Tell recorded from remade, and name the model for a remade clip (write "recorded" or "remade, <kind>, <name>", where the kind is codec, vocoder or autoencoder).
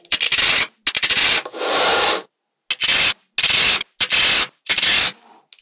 recorded